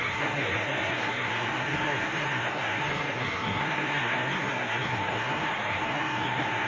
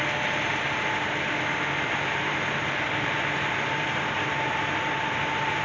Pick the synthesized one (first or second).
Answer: first